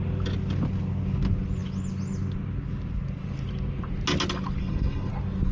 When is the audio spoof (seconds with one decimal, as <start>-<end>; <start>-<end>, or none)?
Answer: 4.6-5.1